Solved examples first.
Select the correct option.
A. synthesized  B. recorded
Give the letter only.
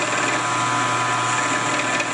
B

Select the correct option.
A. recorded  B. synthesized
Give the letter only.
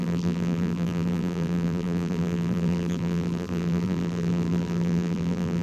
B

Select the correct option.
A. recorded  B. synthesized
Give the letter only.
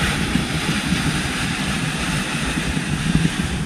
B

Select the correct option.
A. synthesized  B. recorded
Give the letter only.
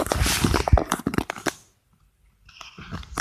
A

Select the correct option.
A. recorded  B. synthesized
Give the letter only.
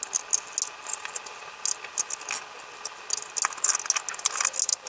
A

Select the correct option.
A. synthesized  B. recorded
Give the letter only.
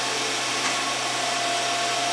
B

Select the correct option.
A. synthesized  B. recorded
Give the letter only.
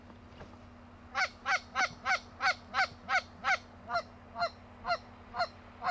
B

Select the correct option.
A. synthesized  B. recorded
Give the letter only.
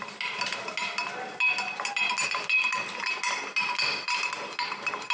B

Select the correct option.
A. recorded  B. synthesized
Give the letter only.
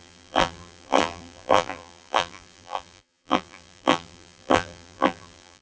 B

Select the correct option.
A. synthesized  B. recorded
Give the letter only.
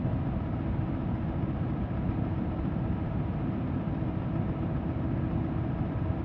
A